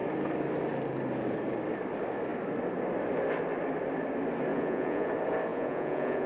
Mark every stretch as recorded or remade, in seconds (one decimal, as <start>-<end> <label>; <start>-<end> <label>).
0.0-4.5 recorded; 4.5-5.1 remade; 5.1-5.5 recorded; 5.5-6.3 remade